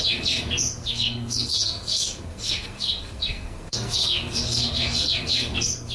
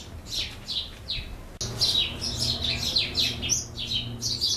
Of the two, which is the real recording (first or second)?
second